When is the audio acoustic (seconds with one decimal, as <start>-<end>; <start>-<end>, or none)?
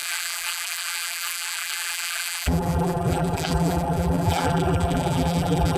none